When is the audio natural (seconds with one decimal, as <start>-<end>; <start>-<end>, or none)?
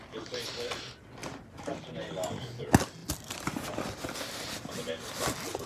0.0-1.2; 1.7-3.0; 4.2-5.7